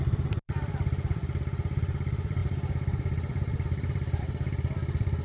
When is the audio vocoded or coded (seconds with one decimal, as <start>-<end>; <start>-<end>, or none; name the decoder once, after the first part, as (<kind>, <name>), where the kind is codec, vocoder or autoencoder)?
0.0-1.2 (vocoder, BigVGAN v2); 1.8-2.4; 4.2-5.2